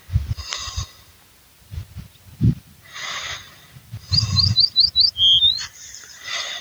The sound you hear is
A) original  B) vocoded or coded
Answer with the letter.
A